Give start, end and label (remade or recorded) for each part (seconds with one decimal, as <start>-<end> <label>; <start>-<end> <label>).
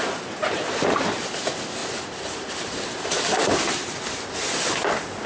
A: 0.0-0.4 recorded; 0.4-1.2 remade; 1.2-1.8 recorded; 1.8-5.3 remade